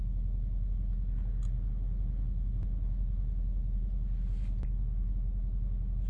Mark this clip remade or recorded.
recorded